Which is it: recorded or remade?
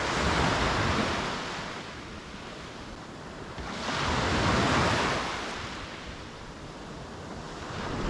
recorded